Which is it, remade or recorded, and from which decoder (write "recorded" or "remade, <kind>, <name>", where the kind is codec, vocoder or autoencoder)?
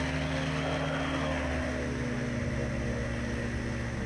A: recorded